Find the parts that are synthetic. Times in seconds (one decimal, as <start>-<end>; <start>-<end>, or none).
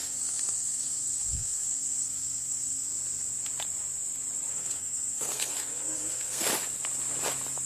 0.0-2.9; 4.5-6.5